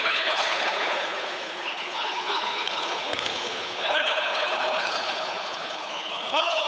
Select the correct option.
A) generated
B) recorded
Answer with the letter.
A